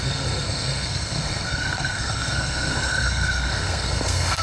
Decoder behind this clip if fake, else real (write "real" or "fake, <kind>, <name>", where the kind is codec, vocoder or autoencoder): fake, codec, SNAC